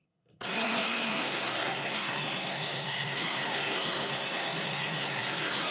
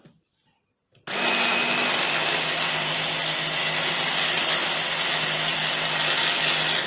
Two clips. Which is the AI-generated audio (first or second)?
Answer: first